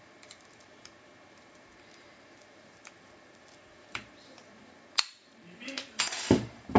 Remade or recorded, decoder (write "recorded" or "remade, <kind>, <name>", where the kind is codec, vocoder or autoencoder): remade, vocoder, BigVGAN v2